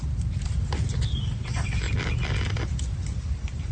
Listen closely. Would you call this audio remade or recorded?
recorded